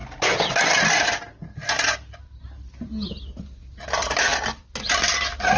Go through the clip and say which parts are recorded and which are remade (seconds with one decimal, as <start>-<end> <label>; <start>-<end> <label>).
0.0-5.6 recorded